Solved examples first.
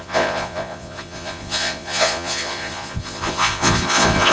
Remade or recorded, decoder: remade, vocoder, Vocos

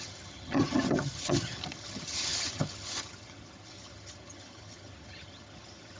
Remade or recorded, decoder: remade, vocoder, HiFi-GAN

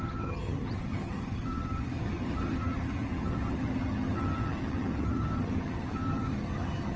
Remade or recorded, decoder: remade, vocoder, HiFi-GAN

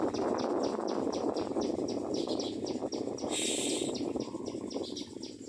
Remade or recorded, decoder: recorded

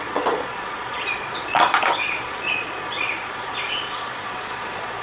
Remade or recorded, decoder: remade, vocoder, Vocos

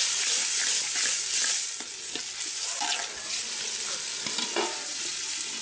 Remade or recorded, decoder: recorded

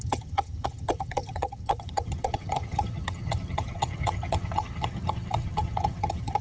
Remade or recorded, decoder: remade, vocoder, HiFi-GAN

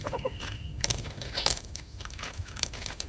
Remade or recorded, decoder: remade, autoencoder, DAC-VAE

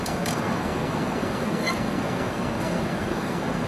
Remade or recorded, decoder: remade, codec, SNAC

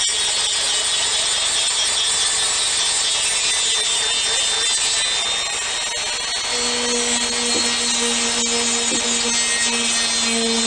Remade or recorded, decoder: recorded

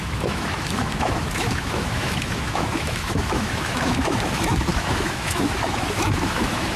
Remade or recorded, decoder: remade, autoencoder, DAC-VAE